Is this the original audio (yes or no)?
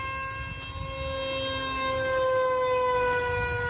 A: yes